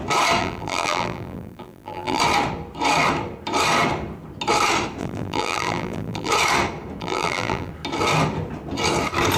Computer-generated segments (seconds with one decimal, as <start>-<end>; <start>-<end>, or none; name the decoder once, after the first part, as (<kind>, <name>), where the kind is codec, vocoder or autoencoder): 0.4-2.2 (vocoder, BigVGAN v2); 5.0-6.3; 7.0-7.7